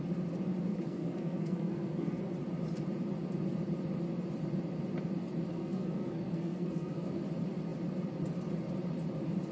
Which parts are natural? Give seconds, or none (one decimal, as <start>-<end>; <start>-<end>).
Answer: 0.0-0.7; 2.2-5.5; 7.2-9.5